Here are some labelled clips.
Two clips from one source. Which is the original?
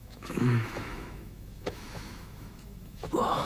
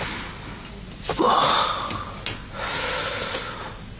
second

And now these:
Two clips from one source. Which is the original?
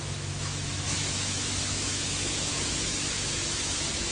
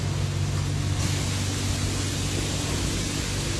second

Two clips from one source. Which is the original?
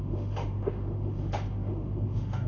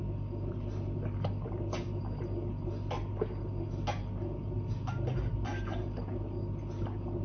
second